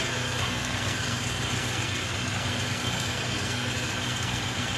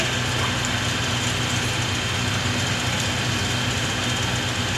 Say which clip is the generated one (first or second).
first